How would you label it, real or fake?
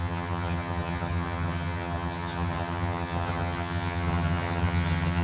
fake